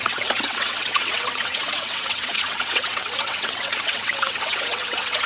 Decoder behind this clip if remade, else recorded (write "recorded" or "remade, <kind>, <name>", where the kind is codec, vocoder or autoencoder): remade, vocoder, WaveNeXt